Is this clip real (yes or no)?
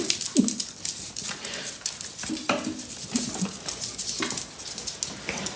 yes